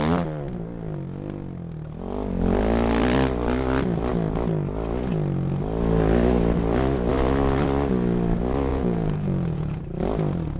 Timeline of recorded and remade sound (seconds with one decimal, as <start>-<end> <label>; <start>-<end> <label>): 0.0-8.7 recorded; 8.7-9.8 remade; 9.8-10.6 recorded